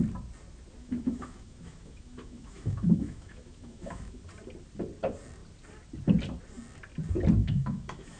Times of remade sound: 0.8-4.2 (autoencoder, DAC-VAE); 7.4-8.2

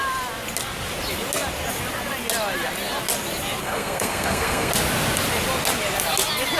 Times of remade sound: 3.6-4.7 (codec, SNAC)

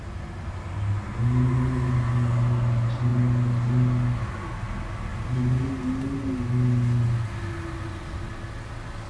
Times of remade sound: none

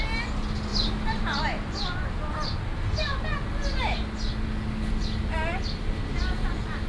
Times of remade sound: 0.7-1.4 (vocoder, BigVGAN v2)